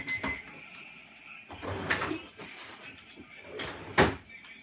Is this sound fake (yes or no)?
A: no